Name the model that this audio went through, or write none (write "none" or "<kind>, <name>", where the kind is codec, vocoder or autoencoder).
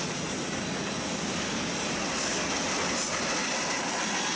none